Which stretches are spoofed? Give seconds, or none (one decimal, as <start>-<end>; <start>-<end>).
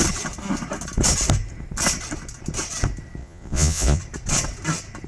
3.2-4.0